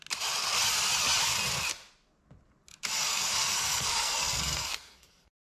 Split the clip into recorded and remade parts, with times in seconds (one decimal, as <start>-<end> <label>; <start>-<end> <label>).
0.0-3.1 recorded; 3.1-5.5 remade